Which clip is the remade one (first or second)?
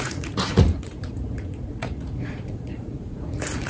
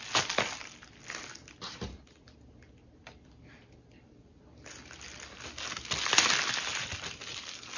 first